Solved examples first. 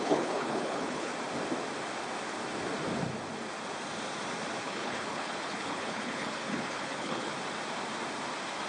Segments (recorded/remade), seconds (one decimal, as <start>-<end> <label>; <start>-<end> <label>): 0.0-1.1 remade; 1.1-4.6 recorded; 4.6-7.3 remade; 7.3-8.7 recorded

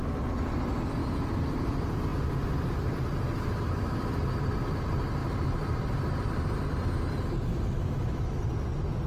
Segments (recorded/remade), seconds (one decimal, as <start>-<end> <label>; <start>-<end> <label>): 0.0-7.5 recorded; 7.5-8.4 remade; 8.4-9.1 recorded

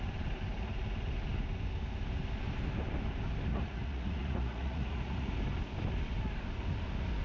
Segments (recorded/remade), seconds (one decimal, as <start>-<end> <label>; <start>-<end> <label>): 0.0-3.5 recorded; 3.5-5.3 remade; 5.3-7.2 recorded

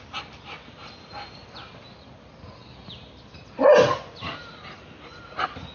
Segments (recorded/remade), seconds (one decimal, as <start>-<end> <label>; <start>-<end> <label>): 0.0-5.7 recorded

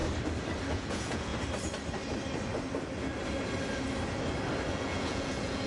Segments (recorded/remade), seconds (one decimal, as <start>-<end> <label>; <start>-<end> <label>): 0.0-0.7 recorded; 0.7-1.3 remade; 1.3-4.7 recorded; 4.7-5.7 remade

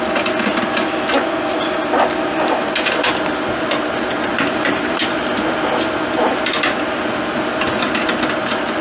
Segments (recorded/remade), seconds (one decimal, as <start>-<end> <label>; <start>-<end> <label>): 0.0-4.3 recorded; 4.3-5.3 remade; 5.3-8.8 recorded

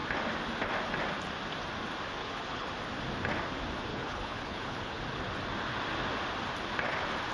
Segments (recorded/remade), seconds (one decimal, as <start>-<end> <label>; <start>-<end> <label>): 0.0-2.2 recorded; 2.2-2.7 remade; 2.7-3.9 recorded; 3.9-5.0 remade; 5.0-7.3 recorded